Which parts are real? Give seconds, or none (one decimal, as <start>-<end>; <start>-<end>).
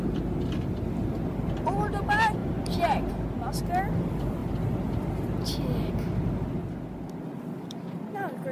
0.0-8.5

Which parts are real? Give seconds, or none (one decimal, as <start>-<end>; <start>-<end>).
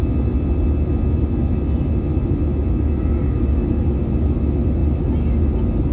0.0-5.9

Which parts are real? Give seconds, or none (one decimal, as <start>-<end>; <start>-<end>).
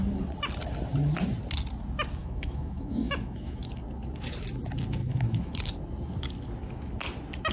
0.0-2.2; 3.7-5.0; 5.6-7.5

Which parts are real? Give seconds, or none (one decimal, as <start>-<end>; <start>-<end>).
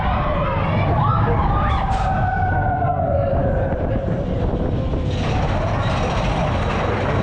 0.0-7.2